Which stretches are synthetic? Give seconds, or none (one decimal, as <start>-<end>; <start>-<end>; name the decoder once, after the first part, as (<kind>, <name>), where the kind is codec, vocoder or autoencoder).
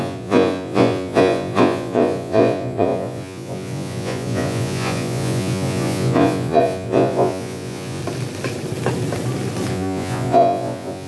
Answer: 0.0-8.0 (vocoder, Vocos); 9.7-11.1